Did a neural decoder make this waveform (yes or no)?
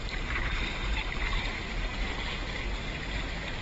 yes